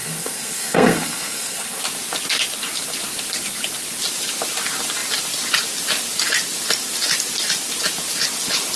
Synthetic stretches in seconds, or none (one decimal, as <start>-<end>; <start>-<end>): 0.0-1.8